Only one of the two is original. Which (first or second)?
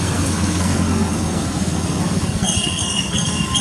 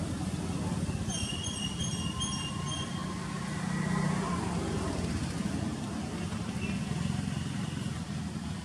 second